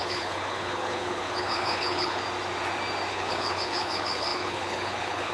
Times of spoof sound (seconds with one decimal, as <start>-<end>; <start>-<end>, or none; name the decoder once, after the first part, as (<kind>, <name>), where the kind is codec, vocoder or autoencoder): 0.0-2.2 (codec, HILCodec); 3.1-5.3